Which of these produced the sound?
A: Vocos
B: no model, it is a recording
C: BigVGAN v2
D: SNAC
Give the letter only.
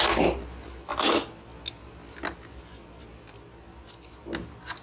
B